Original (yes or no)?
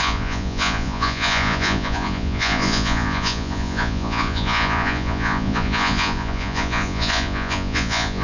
no